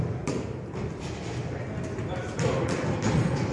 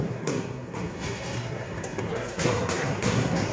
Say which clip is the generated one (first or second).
second